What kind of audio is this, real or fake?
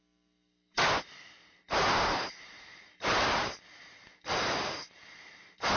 real